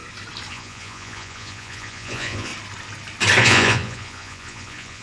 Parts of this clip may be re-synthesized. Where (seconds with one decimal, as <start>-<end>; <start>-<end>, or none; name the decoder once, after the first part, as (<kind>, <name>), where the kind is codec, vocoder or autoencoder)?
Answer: 0.5-2.5 (vocoder, Vocos); 3.4-5.0